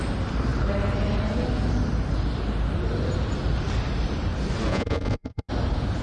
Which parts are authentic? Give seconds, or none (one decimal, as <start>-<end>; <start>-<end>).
0.0-4.7; 5.5-6.0